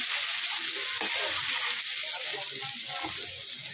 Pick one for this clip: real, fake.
real